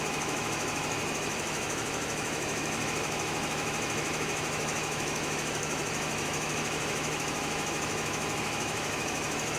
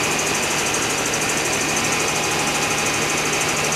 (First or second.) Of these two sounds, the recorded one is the second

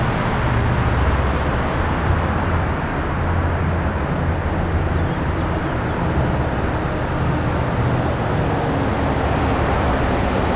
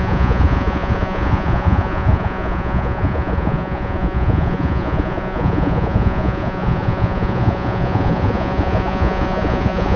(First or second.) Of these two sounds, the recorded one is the first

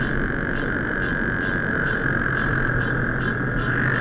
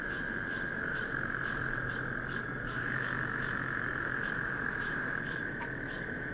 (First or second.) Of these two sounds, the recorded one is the first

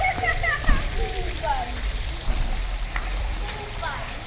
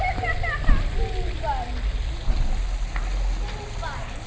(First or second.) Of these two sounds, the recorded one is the second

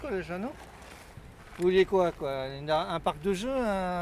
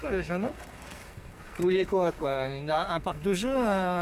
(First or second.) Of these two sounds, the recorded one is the first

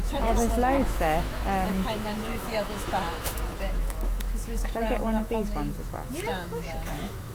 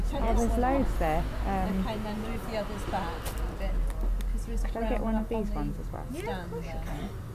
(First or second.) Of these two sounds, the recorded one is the second